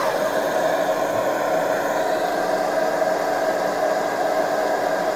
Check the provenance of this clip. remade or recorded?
recorded